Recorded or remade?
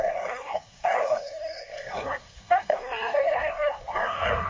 remade